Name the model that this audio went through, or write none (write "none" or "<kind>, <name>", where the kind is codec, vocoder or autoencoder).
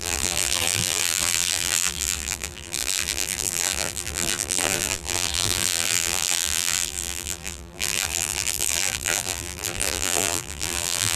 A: vocoder, BigVGAN v2